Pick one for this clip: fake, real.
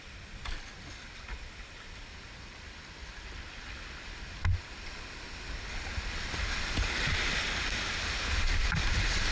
real